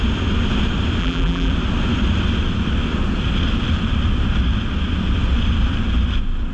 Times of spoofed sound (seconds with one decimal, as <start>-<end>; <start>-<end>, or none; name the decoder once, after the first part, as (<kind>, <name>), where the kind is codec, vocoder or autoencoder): 1.0-1.5 (vocoder, BigVGAN v2)